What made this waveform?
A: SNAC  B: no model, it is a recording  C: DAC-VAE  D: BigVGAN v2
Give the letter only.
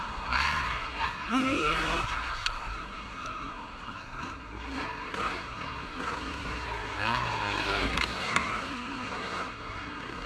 A